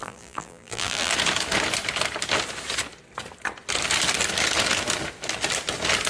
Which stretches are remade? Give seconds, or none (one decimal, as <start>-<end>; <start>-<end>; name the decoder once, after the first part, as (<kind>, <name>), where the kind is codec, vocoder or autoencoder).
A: 0.0-1.1 (vocoder, BigVGAN v2)